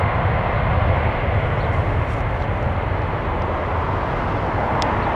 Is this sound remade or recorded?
recorded